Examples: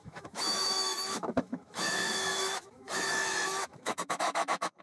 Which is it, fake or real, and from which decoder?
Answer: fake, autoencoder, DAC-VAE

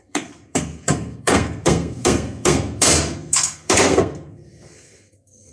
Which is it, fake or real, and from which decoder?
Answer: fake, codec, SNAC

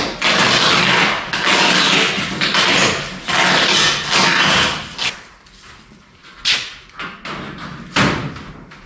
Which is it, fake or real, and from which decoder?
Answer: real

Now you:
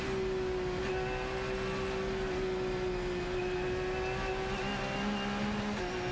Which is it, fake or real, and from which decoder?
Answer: real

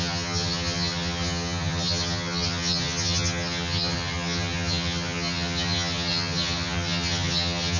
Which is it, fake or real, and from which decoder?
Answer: fake, vocoder, HiFi-GAN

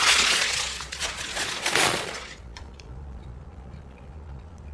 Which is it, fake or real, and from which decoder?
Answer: fake, vocoder, Vocos